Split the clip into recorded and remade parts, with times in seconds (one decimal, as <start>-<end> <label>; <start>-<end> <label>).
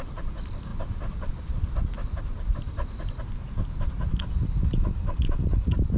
0.0-6.0 recorded